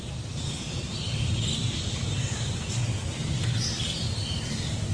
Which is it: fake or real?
fake